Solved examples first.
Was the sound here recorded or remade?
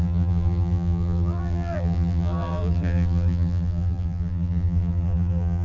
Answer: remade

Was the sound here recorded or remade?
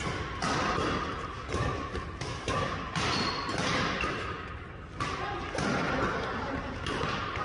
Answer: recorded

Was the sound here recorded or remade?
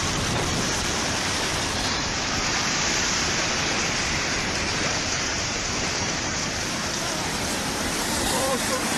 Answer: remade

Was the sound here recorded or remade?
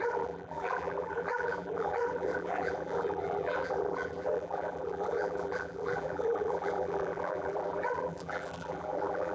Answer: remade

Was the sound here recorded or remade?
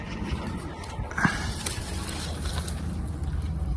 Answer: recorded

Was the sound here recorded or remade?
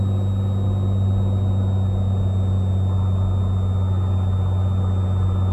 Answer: recorded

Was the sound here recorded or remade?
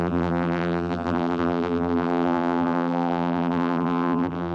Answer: remade